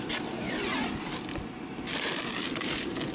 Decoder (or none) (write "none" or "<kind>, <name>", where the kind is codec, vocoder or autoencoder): none